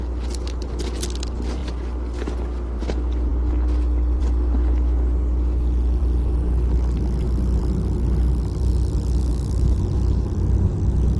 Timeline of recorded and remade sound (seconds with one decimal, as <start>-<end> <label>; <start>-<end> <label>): 0.0-9.2 recorded; 9.2-9.8 remade; 9.8-11.2 recorded

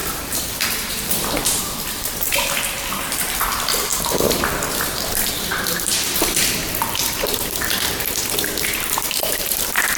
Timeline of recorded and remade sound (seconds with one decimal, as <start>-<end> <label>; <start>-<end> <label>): 0.0-10.0 recorded